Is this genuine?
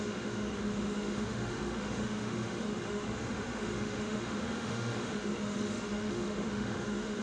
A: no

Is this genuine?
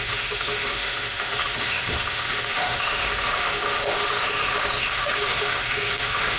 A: no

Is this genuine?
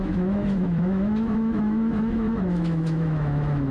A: no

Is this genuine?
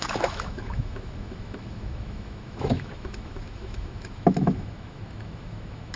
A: no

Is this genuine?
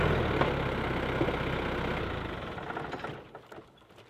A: yes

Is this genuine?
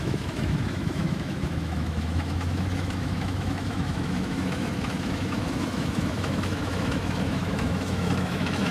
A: no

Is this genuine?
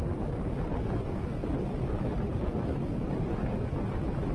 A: yes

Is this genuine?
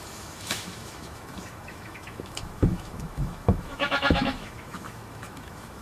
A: no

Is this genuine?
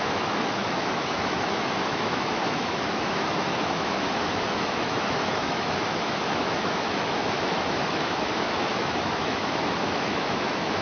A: no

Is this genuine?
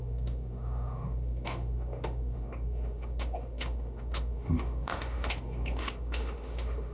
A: no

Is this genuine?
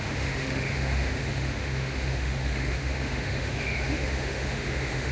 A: no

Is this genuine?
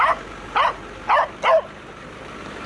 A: yes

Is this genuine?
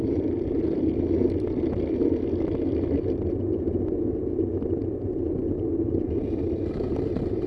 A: yes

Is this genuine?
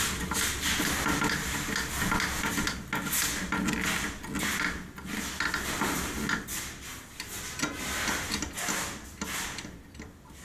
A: yes